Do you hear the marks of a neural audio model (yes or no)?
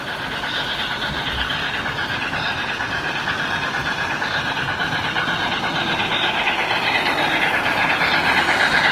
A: yes